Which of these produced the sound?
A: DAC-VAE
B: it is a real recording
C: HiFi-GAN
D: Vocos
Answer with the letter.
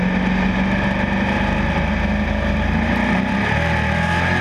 B